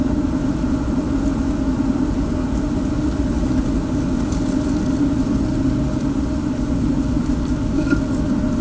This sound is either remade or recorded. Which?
recorded